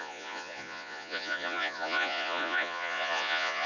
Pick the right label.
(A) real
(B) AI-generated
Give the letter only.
B